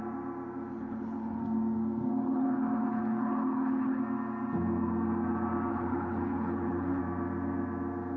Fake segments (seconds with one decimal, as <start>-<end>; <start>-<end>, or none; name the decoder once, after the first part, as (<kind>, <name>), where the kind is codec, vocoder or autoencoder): 0.7-1.4 (codec, HILCodec); 2.2-4.0; 5.7-7.0